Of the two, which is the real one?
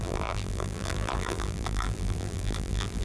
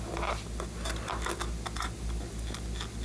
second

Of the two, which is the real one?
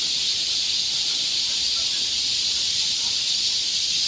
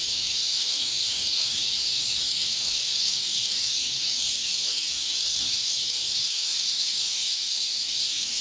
first